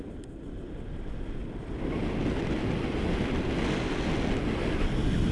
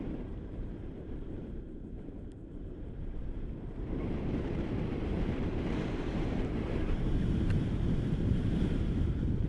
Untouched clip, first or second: first